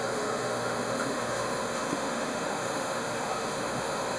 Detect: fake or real fake